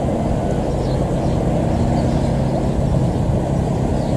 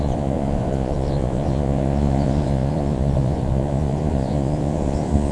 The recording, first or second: first